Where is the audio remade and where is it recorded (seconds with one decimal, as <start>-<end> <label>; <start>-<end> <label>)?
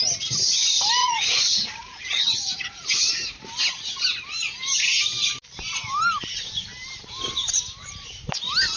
0.0-1.0 recorded; 1.0-3.1 remade; 3.1-8.8 recorded